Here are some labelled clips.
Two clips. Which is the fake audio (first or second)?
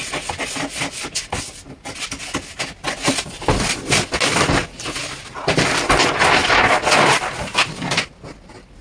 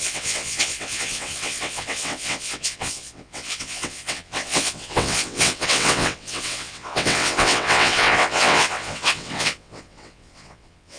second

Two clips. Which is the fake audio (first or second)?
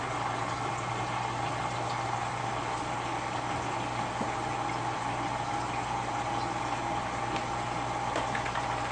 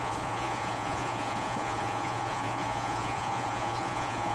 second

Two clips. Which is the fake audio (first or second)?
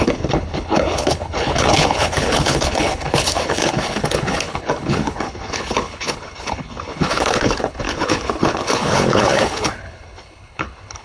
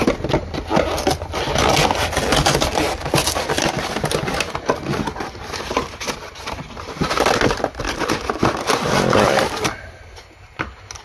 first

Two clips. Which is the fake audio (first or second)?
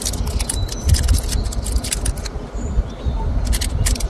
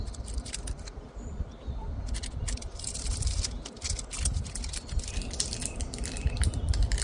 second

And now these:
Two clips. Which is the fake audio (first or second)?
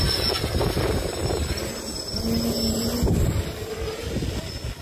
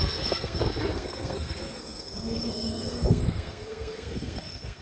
second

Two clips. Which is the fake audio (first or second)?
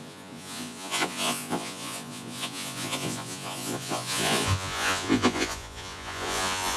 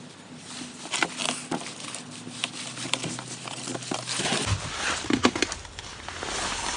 first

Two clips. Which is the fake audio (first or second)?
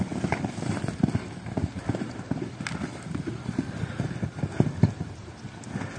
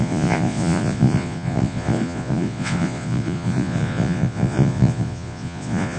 second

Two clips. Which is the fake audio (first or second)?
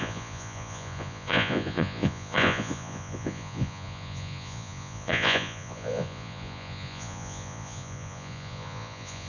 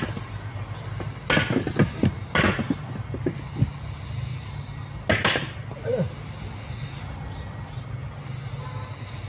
first